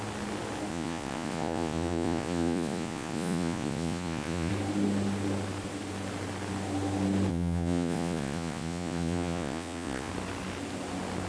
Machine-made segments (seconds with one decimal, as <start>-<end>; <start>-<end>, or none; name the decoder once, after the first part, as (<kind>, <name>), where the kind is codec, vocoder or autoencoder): 0.7-4.5 (vocoder, Vocos); 7.3-10.1